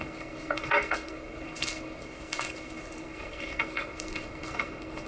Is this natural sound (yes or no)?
no